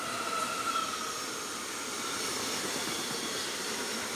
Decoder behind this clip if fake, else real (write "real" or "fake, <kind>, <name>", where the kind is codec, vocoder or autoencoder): fake, vocoder, BigVGAN v2